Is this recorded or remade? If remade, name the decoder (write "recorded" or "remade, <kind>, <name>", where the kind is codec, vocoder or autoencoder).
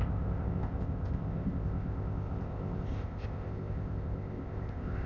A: remade, codec, ZipCodec